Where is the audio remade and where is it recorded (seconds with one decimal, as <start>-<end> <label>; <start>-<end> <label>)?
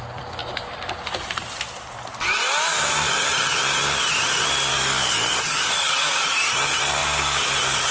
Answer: 0.0-4.7 recorded; 4.7-6.5 remade; 6.5-7.9 recorded